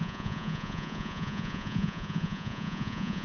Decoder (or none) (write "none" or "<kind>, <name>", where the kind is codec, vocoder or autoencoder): vocoder, Vocos